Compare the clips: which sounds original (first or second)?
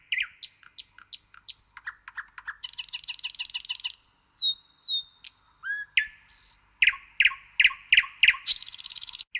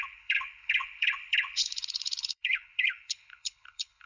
first